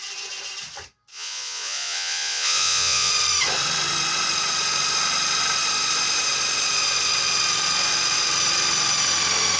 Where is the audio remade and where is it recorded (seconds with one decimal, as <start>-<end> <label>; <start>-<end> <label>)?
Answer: 0.0-1.1 recorded; 1.1-3.1 remade; 3.1-9.6 recorded